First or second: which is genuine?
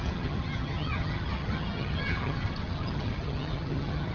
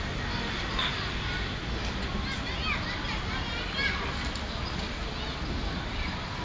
second